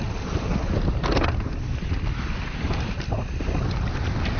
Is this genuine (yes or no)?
yes